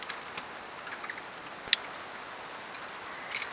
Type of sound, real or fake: real